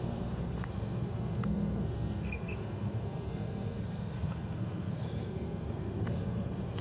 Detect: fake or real fake